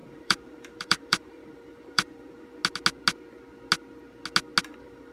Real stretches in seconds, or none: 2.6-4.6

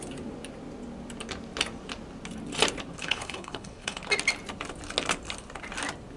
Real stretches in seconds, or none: 0.0-3.0; 4.0-6.2